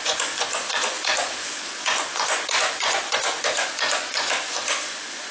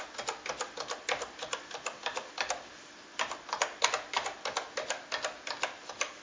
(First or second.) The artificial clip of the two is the first